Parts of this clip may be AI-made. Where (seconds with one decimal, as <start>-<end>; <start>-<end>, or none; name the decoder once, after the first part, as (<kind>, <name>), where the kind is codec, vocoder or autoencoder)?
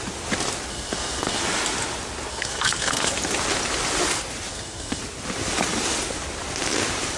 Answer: 0.7-1.4 (codec, SNAC); 2.3-3.1; 4.5-5.0